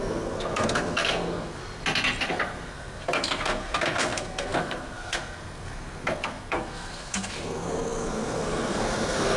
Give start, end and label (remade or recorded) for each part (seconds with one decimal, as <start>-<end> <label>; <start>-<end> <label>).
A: 0.0-1.6 remade; 1.6-2.2 recorded; 2.2-9.4 remade